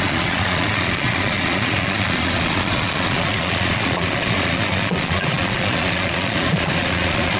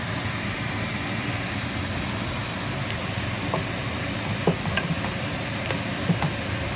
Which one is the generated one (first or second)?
first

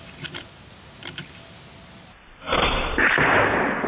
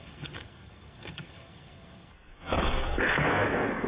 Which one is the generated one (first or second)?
second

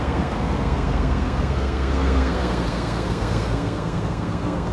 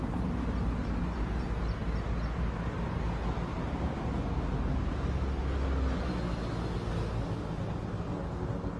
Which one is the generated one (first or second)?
first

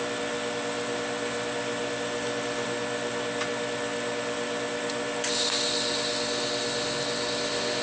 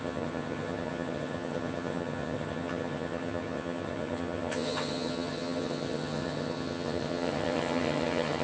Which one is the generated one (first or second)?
second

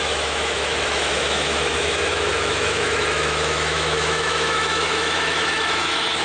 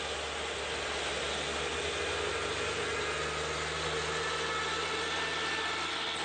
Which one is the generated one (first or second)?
first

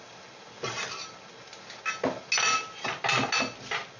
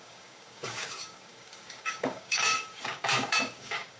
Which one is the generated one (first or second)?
second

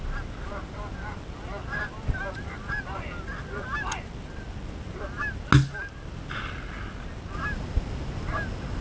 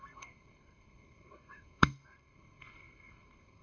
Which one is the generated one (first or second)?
second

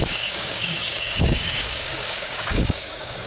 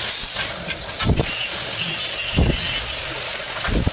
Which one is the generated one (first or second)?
first